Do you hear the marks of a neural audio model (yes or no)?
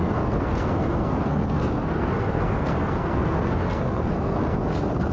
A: yes